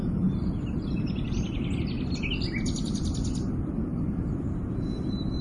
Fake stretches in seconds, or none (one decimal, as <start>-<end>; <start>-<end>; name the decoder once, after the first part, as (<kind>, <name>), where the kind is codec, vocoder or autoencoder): none